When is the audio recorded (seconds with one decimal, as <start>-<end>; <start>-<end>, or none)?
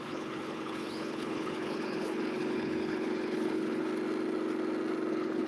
3.9-5.1